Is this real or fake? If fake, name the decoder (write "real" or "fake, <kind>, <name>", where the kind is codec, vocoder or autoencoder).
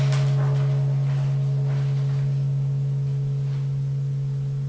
real